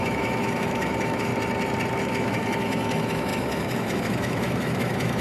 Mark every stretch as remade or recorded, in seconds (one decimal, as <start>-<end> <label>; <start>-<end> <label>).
0.0-1.3 remade; 1.3-2.0 recorded; 2.0-5.2 remade